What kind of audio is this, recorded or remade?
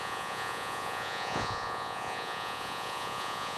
remade